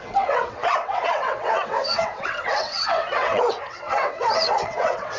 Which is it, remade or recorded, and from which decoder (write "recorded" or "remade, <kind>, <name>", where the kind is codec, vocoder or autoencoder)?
remade, vocoder, WaveNeXt